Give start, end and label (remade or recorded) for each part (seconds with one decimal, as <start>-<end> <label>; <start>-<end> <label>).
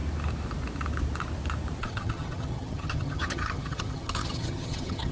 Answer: 0.0-1.8 recorded; 1.8-5.1 remade